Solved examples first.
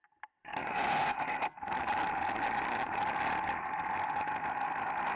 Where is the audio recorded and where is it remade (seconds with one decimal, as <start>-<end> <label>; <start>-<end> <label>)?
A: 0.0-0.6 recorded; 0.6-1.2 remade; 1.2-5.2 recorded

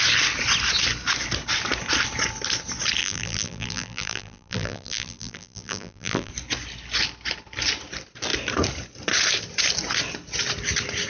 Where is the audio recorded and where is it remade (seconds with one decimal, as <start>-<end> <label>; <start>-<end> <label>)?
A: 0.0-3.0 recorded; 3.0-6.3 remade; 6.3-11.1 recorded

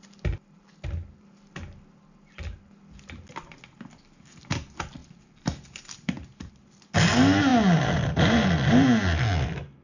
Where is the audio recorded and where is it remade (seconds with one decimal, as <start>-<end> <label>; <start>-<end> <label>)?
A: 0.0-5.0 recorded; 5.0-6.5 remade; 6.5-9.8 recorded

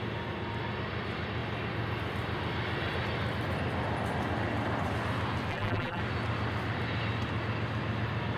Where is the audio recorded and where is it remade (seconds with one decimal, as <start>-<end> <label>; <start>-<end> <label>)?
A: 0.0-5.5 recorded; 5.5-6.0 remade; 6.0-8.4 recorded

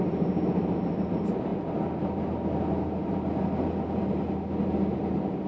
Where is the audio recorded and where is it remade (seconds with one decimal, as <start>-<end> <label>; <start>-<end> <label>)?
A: 0.0-5.5 recorded

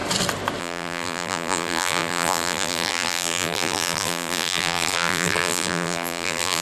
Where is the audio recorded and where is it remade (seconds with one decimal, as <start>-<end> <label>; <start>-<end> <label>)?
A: 0.0-0.6 recorded; 0.6-6.6 remade

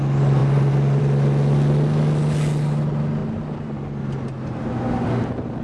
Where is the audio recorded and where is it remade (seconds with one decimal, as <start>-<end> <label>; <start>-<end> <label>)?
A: 0.0-3.2 recorded; 3.2-3.8 remade; 3.8-5.6 recorded

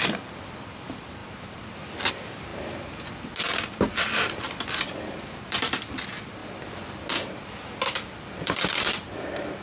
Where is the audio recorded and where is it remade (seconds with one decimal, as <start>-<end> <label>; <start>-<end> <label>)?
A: 0.0-1.2 remade; 1.2-2.1 recorded; 2.1-2.5 remade; 2.5-3.8 recorded; 3.8-6.4 remade; 6.4-8.2 recorded; 8.2-9.6 remade